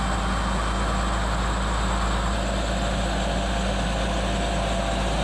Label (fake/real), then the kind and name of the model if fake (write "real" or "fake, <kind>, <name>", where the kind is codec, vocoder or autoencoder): real